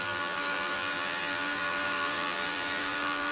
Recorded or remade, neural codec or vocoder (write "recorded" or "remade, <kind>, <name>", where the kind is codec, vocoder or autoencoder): remade, vocoder, BigVGAN v2